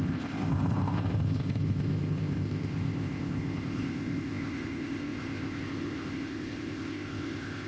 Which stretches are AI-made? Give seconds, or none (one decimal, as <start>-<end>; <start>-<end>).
0.0-7.7